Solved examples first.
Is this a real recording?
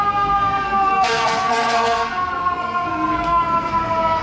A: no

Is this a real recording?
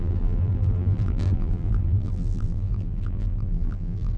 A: no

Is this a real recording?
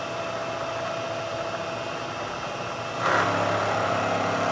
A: yes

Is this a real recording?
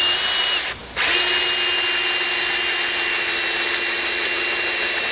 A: yes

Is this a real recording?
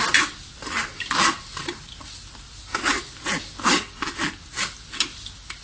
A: yes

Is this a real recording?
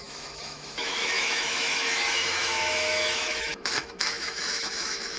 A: no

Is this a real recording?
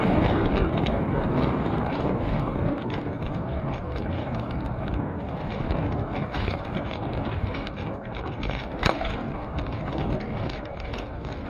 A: no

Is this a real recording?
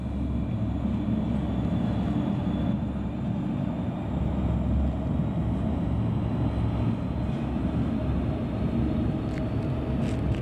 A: yes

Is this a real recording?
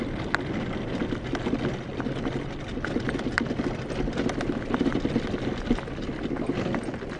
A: yes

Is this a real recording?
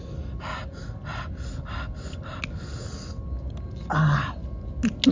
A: yes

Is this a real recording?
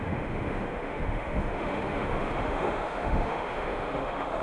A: no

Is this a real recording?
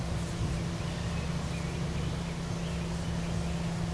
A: yes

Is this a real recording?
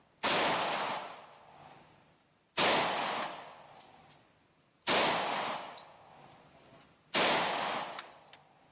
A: yes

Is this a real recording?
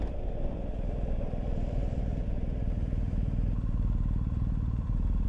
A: no